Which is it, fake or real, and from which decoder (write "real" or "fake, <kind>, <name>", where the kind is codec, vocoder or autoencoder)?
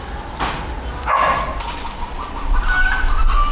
real